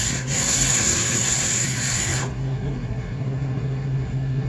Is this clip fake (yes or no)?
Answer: yes